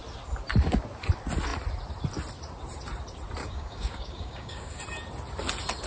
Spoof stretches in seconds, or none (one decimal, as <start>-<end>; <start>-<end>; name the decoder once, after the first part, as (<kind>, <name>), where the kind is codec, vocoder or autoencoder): 3.4-4.8 (codec, DAC)

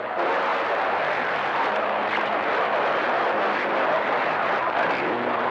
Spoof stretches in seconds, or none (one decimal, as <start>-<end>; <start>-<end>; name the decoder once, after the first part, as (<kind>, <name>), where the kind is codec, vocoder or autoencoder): none

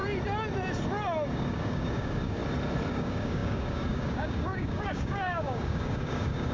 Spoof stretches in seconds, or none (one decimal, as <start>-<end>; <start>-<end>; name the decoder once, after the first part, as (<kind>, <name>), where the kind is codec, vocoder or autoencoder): 1.3-2.4 (codec, DAC); 2.9-6.5

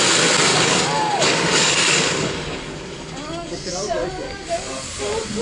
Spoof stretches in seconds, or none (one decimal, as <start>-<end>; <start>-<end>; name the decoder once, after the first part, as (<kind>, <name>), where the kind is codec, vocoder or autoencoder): 0.5-3.7 (codec, DAC); 4.2-4.9

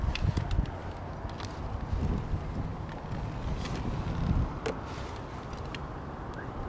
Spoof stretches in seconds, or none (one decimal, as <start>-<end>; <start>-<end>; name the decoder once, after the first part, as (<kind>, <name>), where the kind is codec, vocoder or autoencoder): none